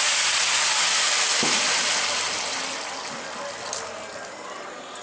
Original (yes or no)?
yes